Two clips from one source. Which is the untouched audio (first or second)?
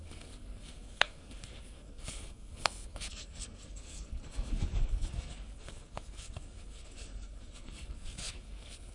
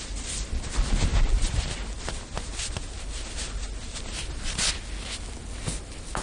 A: second